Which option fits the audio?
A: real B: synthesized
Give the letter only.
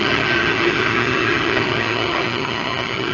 B